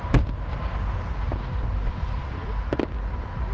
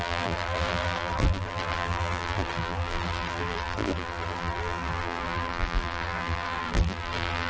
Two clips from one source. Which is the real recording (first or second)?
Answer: first